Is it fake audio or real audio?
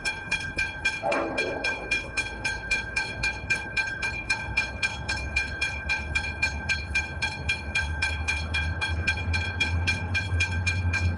fake